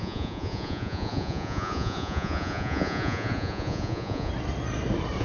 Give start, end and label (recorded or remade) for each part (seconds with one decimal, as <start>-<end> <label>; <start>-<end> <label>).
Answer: 0.0-4.3 remade; 4.3-5.2 recorded